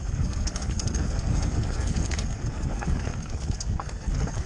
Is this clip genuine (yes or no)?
no